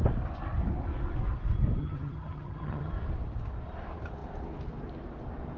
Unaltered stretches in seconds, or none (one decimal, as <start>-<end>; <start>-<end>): 0.0-1.8; 2.9-5.6